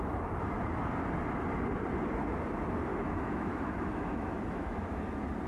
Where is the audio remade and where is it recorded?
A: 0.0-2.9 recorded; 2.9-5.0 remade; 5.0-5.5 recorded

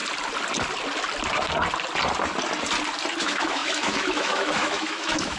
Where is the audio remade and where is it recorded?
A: 0.0-3.2 recorded; 3.2-5.4 remade